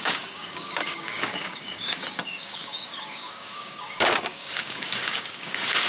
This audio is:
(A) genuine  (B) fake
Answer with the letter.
B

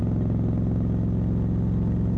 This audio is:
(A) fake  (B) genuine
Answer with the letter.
B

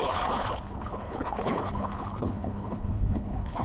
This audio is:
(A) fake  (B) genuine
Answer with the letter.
A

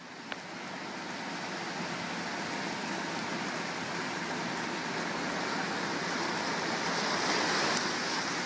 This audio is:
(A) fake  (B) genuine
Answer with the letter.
B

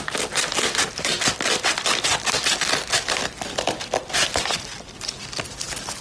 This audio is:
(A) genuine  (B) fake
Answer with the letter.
A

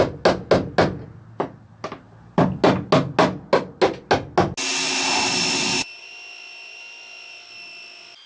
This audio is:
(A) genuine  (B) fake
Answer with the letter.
A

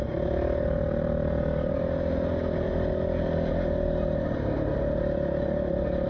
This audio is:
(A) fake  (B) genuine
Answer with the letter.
B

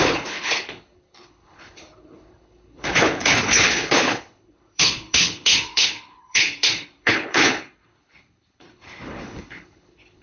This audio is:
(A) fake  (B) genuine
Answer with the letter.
A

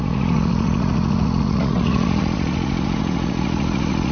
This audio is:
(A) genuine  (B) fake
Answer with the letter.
B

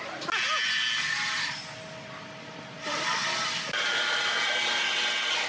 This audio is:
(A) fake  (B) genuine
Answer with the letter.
B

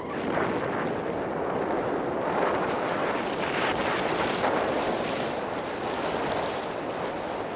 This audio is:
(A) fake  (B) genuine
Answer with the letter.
A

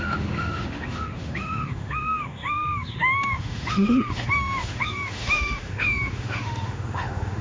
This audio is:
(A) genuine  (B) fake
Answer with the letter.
B